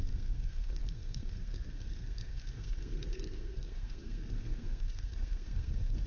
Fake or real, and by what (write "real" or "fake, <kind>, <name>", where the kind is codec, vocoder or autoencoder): fake, codec, SNAC